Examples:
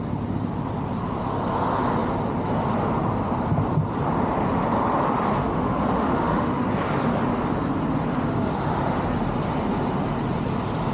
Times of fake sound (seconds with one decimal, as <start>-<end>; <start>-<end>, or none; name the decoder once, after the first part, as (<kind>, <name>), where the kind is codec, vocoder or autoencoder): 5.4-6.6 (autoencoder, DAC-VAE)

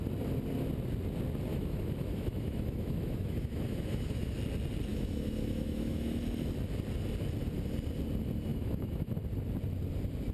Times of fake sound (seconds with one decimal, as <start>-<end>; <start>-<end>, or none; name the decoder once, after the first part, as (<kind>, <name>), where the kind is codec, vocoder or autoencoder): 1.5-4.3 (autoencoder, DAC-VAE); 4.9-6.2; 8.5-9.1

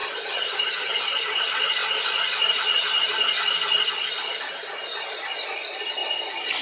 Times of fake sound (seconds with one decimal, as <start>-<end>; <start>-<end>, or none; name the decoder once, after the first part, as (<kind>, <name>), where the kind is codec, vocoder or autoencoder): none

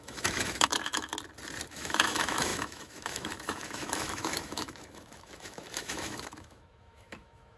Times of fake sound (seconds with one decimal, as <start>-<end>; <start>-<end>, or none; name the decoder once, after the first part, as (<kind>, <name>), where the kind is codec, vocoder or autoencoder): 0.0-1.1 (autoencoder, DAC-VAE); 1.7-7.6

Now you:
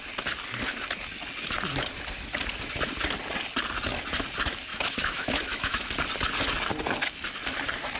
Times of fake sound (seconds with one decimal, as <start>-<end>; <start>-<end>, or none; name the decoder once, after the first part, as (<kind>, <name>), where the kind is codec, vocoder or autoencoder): 4.7-5.9 (autoencoder, DAC-VAE)

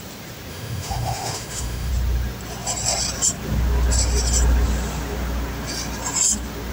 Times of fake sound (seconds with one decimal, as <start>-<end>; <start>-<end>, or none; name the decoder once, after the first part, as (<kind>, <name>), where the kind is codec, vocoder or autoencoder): 0.5-1.9 (autoencoder, DAC-VAE)

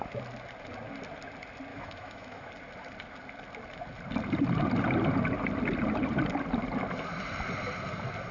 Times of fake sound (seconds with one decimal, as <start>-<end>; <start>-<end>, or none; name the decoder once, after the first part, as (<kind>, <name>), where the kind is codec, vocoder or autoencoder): 1.7-2.5 (autoencoder, DAC-VAE)